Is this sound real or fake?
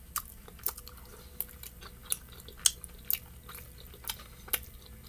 real